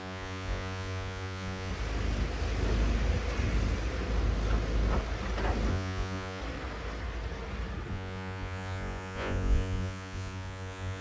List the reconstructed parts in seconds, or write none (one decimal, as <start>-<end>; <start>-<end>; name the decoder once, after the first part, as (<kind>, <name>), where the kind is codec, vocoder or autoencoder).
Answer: 0.0-1.7 (vocoder, Vocos); 5.7-6.4; 7.9-11.0